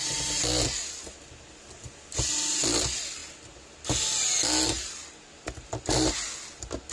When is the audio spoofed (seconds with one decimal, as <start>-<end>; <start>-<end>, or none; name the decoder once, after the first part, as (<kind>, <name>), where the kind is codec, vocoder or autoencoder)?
none